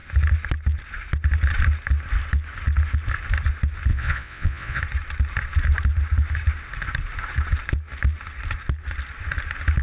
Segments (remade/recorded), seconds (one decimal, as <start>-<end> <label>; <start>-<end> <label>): 0.0-3.9 recorded; 3.9-4.8 remade; 4.8-9.8 recorded